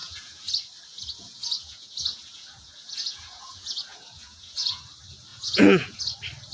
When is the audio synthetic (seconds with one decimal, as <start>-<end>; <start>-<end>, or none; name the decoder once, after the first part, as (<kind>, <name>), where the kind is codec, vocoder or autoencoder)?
0.0-0.5 (vocoder, Vocos); 0.9-4.8; 5.3-6.0